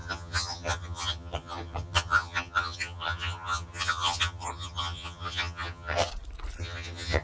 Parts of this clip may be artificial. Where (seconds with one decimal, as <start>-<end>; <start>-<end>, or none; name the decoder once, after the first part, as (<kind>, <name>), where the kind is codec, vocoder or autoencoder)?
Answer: 0.0-6.1 (vocoder, HiFi-GAN); 6.6-7.2